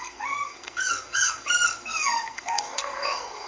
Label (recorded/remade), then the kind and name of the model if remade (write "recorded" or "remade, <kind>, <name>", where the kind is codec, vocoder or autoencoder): remade, codec, SNAC